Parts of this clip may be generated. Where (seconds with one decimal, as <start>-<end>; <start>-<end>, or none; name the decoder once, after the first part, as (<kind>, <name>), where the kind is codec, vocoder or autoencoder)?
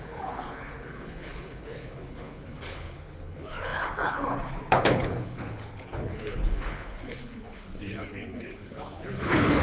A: 0.0-9.6 (codec, HILCodec)